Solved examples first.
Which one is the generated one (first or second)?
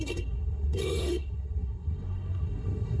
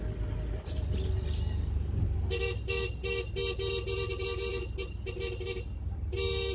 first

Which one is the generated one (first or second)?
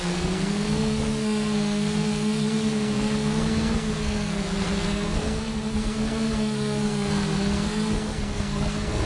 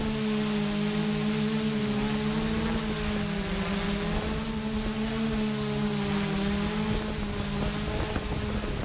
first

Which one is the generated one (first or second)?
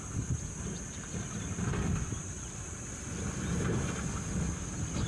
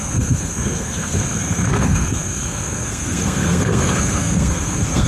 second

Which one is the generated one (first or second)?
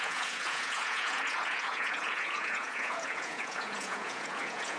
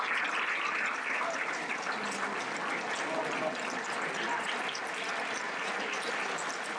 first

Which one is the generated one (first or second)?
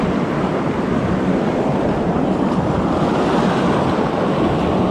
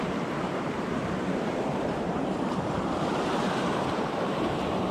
second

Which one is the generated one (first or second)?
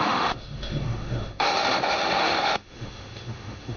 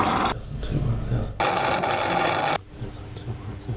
first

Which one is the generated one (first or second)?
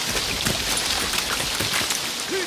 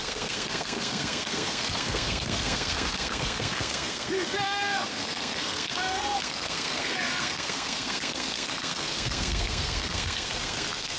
second